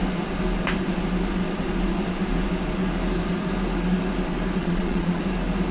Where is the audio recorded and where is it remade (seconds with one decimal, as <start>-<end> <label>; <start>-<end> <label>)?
0.0-4.6 recorded; 4.6-5.2 remade; 5.2-5.7 recorded